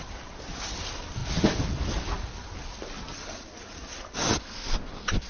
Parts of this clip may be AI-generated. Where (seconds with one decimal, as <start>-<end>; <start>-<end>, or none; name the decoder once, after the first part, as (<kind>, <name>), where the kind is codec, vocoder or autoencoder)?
none

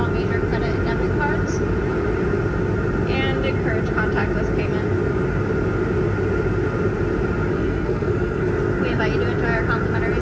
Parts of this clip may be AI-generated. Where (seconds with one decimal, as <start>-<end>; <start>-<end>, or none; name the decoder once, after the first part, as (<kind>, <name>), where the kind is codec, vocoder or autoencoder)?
7.5-8.5 (codec, SNAC)

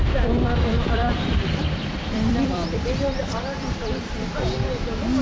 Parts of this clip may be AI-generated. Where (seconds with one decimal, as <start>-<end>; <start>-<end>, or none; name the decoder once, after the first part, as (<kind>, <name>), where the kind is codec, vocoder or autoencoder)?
1.0-4.1 (vocoder, BigVGAN v2)

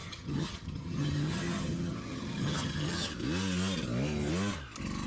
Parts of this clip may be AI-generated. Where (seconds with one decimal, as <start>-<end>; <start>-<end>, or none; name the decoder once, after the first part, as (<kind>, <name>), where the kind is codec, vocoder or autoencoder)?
0.0-3.1 (vocoder, HiFi-GAN)